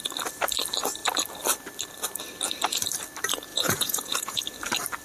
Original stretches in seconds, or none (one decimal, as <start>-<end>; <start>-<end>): 0.0-3.5; 4.4-5.0